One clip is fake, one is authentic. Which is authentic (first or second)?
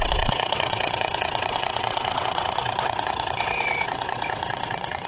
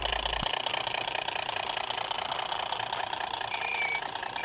second